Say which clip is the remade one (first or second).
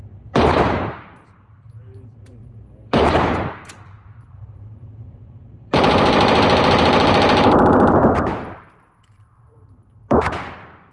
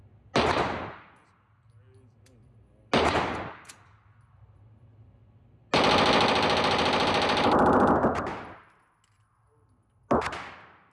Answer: first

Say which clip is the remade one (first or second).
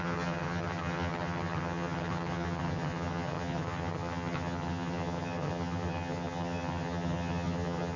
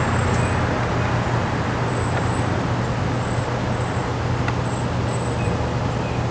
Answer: first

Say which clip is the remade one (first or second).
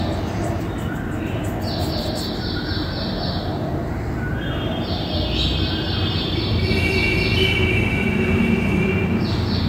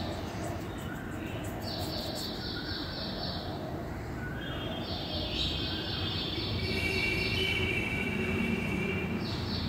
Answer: second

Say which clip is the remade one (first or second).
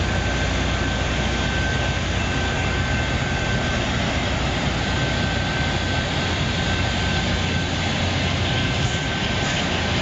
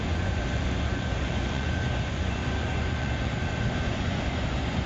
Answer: second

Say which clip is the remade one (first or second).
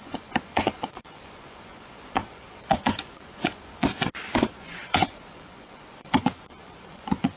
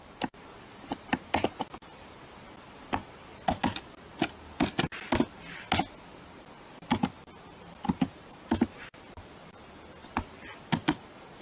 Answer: first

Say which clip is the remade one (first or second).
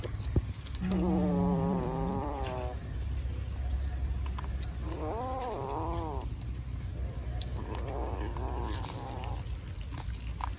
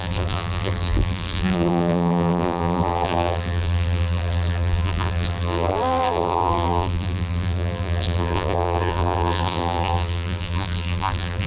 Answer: second